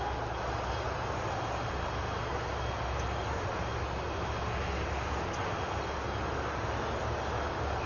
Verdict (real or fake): real